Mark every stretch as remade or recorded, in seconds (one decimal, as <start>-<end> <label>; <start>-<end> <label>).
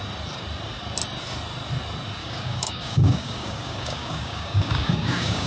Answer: 0.0-2.2 recorded; 2.2-5.5 remade